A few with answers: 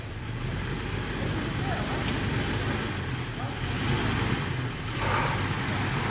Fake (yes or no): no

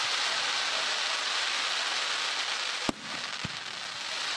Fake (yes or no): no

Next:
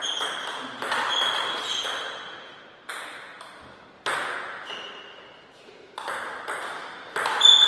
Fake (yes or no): no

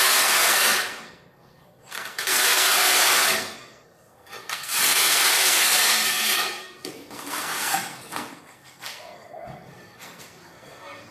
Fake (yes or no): yes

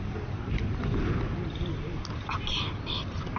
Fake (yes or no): no